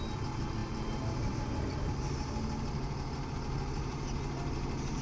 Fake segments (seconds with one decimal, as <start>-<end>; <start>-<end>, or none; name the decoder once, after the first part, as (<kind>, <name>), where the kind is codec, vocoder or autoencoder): none